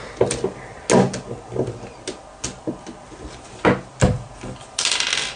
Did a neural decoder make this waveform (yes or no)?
no